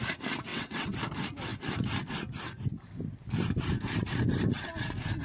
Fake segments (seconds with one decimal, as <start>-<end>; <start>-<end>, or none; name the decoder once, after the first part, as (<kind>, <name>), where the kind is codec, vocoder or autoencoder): 0.5-1.0 (vocoder, WaveNeXt)